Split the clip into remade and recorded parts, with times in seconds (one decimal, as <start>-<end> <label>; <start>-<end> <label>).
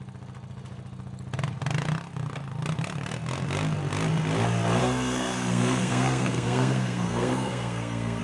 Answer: 0.0-4.8 recorded; 4.8-8.2 remade